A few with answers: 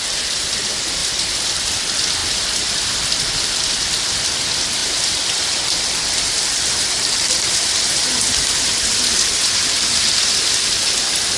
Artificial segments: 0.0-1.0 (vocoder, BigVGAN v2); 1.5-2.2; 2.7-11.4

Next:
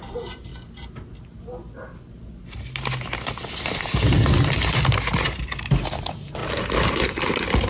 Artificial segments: 0.0-0.5 (vocoder, BigVGAN v2); 5.1-6.4; 6.9-7.7

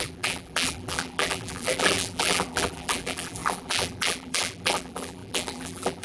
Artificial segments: 0.0-6.0 (vocoder, BigVGAN v2)